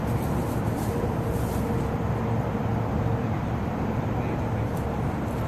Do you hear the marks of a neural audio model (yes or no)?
no